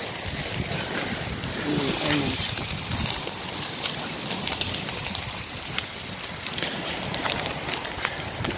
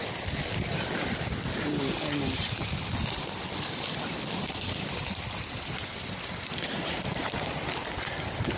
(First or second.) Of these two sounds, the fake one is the first